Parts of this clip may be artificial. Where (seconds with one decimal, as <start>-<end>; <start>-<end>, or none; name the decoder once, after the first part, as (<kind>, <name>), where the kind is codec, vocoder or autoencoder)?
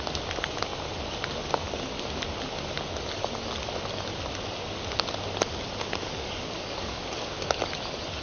6.0-7.6 (codec, DAC)